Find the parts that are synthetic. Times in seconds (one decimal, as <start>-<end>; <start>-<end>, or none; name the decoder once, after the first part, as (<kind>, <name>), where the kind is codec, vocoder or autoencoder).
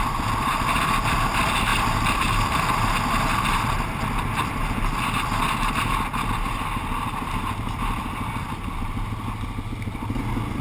none